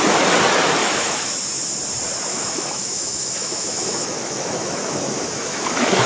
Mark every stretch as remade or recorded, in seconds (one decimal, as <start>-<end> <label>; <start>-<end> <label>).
0.0-0.8 recorded; 0.8-1.3 remade; 1.3-2.3 recorded; 2.3-6.1 remade